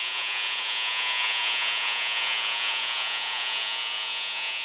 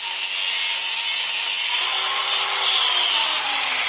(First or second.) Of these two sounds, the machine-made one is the first